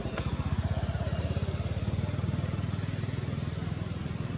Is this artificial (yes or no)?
no